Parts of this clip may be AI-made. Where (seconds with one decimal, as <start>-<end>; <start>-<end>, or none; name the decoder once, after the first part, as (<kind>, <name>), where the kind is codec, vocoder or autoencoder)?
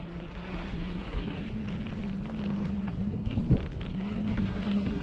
0.0-1.6 (codec, SNAC); 2.7-3.4; 3.9-5.0